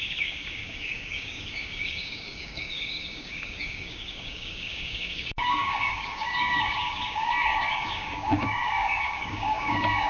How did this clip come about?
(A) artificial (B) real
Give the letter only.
A